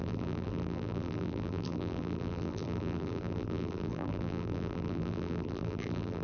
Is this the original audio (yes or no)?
no